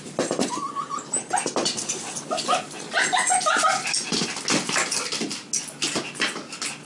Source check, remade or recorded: recorded